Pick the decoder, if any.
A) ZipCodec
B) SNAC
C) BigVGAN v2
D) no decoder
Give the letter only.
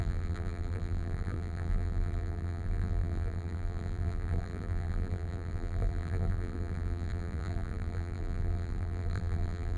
C